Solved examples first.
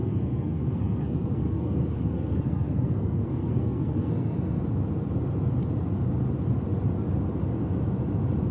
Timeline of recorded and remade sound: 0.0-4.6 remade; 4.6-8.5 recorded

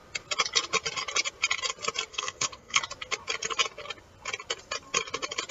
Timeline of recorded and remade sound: 0.0-2.1 recorded; 2.1-2.8 remade; 2.8-5.5 recorded

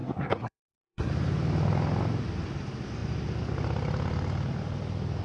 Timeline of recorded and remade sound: 0.0-1.1 remade; 1.1-5.2 recorded

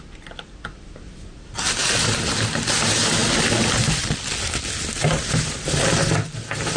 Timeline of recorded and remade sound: 0.0-6.8 recorded

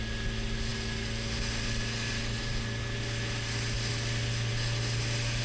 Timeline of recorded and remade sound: 0.0-5.4 recorded

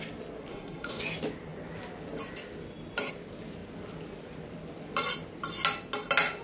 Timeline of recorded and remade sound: 0.0-0.5 recorded; 0.5-1.0 remade; 1.0-6.4 recorded

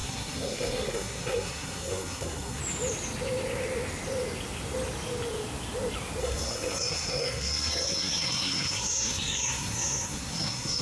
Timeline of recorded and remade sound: 0.0-2.6 remade; 2.6-6.2 recorded; 6.2-10.8 remade

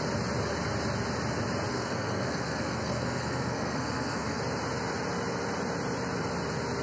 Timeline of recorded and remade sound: 0.0-1.7 recorded; 1.7-4.4 remade; 4.4-6.8 recorded